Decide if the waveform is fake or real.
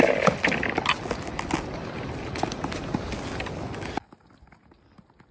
real